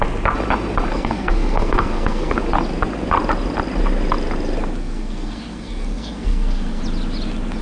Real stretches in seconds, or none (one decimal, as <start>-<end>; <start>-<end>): 0.0-0.9; 2.4-4.8; 6.8-7.6